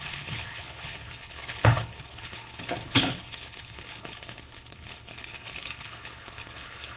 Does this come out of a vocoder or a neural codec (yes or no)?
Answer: yes